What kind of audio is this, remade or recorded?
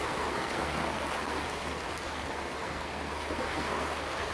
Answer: remade